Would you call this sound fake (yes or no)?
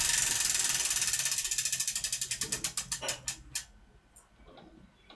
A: no